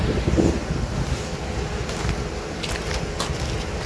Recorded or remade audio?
recorded